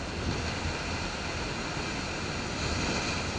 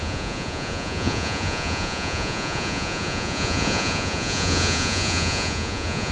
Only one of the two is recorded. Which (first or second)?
first